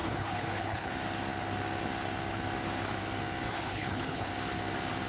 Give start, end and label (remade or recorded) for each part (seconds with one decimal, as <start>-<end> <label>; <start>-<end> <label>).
0.0-0.9 remade; 0.9-3.5 recorded; 3.5-4.3 remade; 4.3-5.1 recorded